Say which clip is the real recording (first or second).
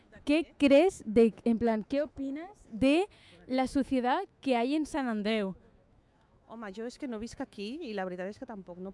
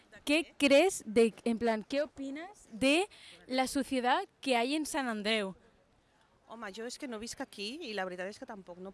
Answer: second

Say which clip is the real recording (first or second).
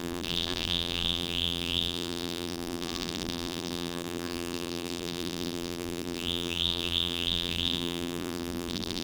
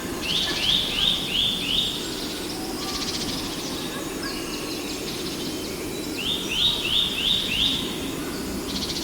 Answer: second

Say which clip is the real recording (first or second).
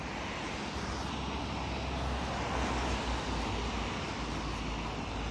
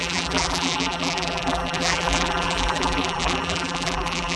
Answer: first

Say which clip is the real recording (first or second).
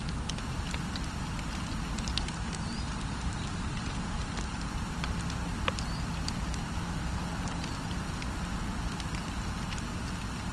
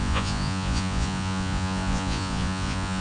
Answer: first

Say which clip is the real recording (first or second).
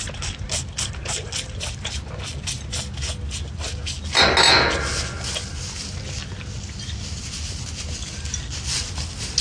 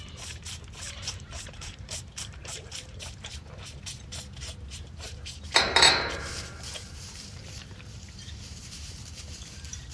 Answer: first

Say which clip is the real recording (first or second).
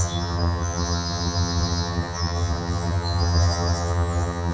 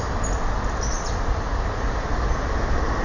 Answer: second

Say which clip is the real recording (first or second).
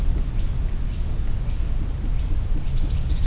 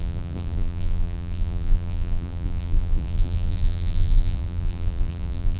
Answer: first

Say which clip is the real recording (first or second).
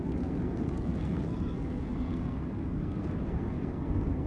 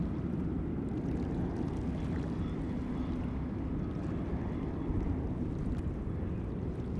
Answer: second